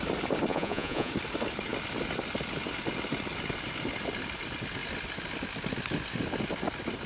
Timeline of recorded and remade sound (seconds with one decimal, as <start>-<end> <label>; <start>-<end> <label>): 0.0-0.5 recorded; 0.5-1.1 remade; 1.1-7.1 recorded